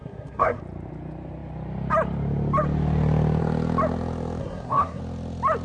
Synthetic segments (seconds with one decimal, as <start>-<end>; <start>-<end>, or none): 0.0-0.6; 4.4-5.0